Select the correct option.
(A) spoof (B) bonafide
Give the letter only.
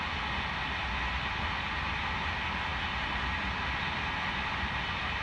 B